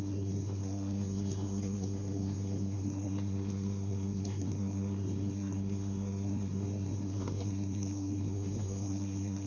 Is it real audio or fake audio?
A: fake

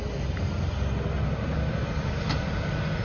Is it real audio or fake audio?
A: real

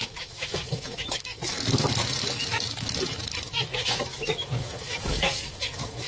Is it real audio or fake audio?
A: fake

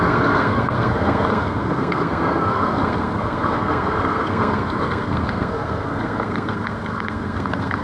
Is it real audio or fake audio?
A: fake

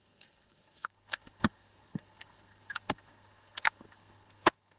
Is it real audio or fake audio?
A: fake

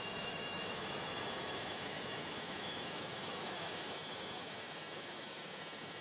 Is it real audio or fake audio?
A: fake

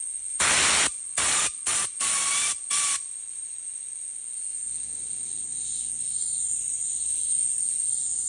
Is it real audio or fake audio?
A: real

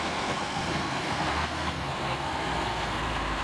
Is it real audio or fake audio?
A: fake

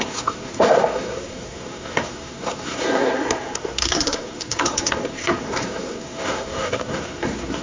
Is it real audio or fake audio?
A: fake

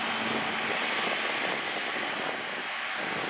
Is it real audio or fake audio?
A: real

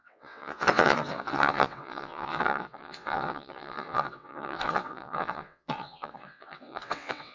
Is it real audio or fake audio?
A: fake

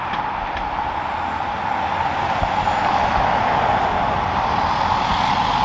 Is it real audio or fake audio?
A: real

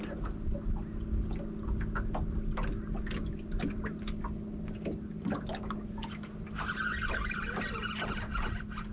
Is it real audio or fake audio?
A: real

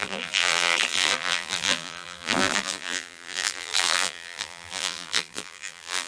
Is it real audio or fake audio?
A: fake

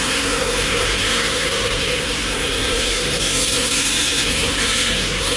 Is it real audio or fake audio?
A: fake